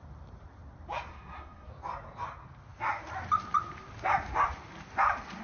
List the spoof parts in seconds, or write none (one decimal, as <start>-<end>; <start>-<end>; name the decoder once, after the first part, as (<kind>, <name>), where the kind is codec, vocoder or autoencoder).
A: 1.1-1.7 (codec, SNAC)